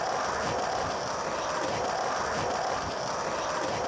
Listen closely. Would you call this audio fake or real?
real